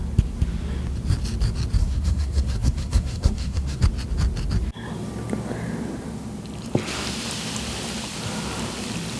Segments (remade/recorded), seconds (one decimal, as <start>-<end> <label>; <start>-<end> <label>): 0.0-1.8 recorded; 1.8-3.8 remade; 3.8-9.2 recorded